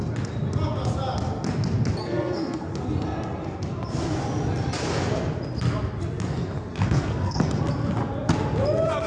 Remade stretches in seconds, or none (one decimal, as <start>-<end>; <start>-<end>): 2.0-2.7; 6.7-7.6